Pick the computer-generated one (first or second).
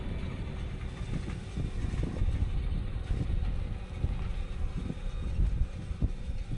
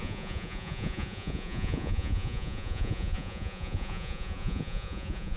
second